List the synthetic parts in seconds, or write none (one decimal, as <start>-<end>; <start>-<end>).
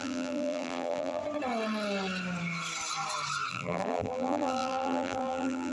0.0-1.2; 3.5-5.7